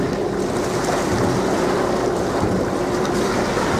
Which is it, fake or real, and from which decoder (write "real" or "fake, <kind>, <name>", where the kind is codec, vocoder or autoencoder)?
fake, vocoder, BigVGAN v2